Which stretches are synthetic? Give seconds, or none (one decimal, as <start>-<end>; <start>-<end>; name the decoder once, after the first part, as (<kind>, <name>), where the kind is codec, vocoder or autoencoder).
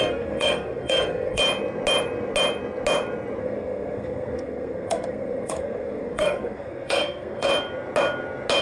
0.0-1.4 (codec, SNAC); 3.4-7.5